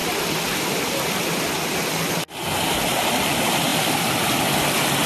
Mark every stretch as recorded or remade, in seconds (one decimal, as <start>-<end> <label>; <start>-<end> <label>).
0.0-5.1 recorded